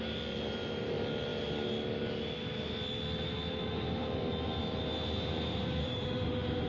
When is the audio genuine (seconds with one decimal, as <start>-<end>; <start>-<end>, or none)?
0.0-5.8